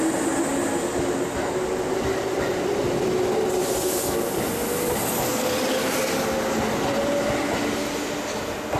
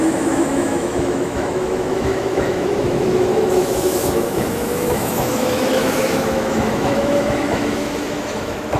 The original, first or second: first